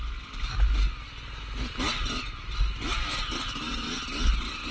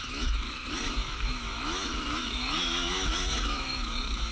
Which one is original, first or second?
first